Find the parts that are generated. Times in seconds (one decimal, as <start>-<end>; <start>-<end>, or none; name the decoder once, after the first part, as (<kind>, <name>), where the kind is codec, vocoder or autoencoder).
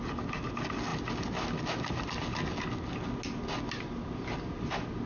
none